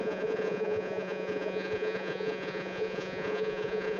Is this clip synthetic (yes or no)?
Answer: yes